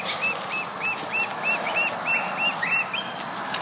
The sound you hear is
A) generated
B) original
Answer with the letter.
B